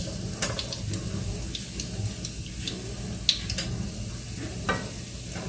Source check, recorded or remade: recorded